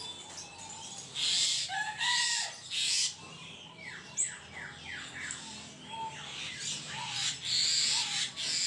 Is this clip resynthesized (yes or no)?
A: no